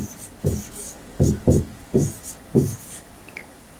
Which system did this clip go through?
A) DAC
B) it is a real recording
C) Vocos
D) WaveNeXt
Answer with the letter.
A